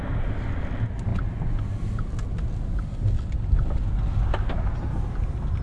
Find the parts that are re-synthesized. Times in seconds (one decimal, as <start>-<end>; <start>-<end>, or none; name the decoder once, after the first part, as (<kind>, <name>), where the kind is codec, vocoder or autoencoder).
none